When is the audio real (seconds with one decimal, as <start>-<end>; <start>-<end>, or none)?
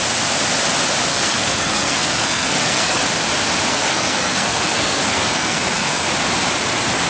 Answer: 0.0-1.1; 3.0-3.7; 6.1-7.1